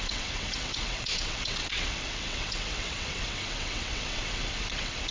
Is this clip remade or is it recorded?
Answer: remade